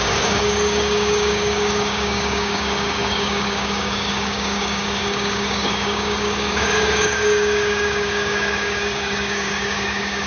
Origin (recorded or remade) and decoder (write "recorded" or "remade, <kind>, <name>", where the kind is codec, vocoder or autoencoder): remade, codec, DAC